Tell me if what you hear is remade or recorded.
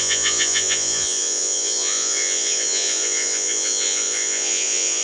remade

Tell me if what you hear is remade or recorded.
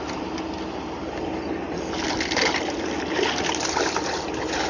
recorded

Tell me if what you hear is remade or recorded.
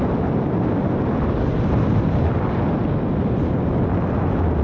recorded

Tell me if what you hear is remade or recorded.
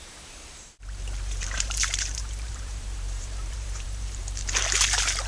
remade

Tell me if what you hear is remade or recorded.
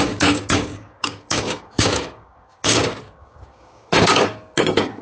remade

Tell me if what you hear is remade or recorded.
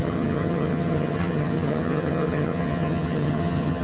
remade